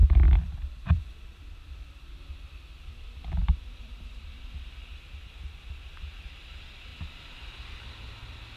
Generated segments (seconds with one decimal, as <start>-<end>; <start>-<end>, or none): 0.0-2.2; 3.4-6.4